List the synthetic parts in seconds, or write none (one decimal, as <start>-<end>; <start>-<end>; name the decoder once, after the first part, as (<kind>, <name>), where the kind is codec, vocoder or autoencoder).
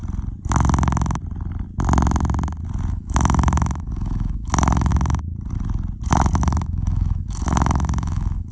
2.9-4.9 (autoencoder, DAC-VAE); 6.4-8.5